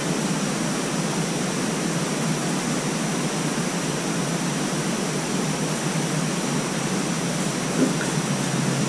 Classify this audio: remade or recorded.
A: recorded